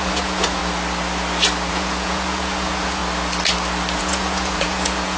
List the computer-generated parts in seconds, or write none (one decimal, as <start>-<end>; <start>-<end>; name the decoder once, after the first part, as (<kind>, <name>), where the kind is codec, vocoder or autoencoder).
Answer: 0.0-0.6 (vocoder, Vocos); 1.7-3.0; 4.0-5.2